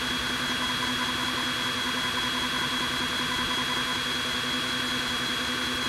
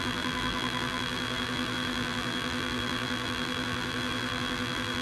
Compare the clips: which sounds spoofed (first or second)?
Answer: second